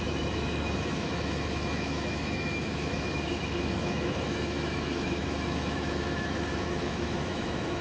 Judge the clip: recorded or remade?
remade